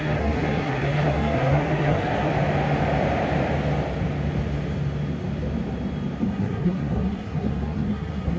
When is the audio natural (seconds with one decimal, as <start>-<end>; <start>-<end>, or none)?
2.3-6.2